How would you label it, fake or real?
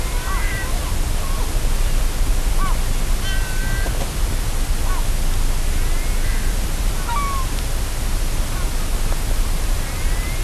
real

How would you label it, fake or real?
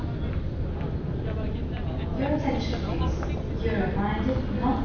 real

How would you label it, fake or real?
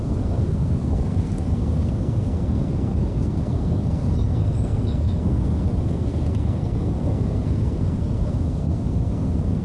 fake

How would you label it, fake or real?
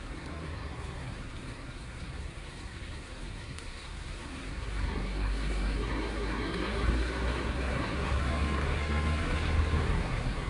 fake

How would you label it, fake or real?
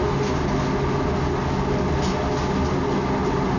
real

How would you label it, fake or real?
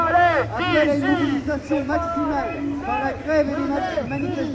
real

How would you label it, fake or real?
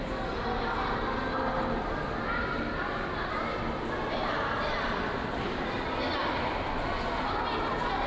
real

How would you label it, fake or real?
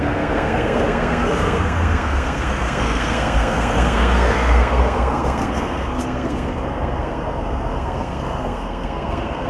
fake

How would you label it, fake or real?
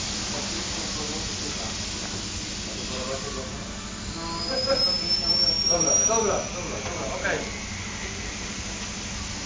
real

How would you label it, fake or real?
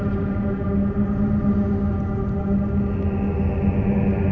real